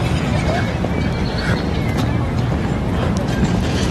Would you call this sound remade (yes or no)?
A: no